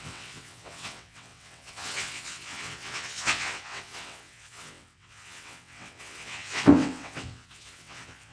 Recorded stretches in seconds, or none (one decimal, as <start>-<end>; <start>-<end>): none